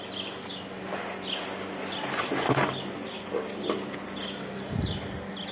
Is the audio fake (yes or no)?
no